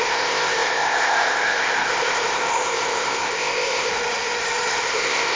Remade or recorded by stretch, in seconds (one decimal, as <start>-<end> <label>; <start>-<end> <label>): 0.0-3.9 remade; 3.9-4.8 recorded; 4.8-5.4 remade